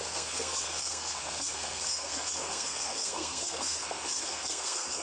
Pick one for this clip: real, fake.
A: fake